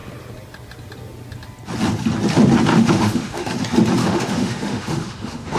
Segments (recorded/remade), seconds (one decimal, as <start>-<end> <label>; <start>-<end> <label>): 0.0-2.7 recorded; 2.7-3.5 remade; 3.5-4.0 recorded; 4.0-5.6 remade